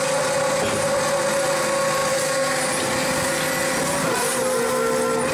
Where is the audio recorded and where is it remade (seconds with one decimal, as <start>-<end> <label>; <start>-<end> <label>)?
0.0-5.3 recorded